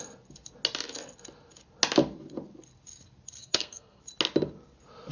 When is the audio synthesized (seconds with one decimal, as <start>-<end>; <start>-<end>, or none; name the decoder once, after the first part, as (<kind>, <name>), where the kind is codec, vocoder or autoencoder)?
3.4-4.0 (codec, SNAC)